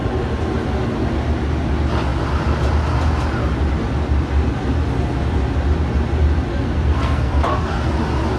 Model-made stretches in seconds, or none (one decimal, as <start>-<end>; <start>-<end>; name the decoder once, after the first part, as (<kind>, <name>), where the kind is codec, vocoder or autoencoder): 6.5-7.9 (codec, SNAC)